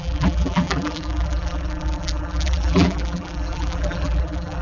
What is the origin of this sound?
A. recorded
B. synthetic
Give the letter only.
B